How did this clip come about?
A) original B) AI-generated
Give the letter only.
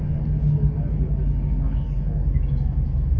A